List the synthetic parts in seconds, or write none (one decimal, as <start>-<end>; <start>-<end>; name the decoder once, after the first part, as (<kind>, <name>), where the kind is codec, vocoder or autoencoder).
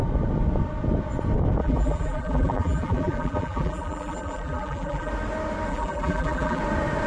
1.6-5.1 (vocoder, BigVGAN v2); 5.7-6.6